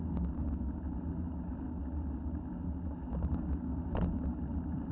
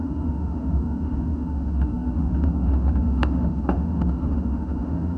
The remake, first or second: second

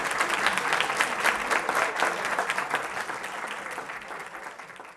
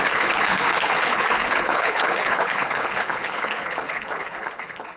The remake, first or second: second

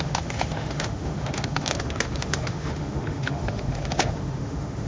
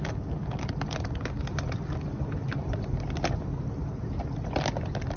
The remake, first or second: first